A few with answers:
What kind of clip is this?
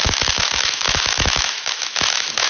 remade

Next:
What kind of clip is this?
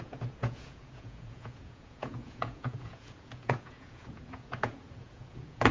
remade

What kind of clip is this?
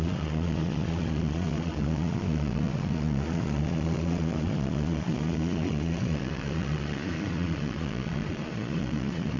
remade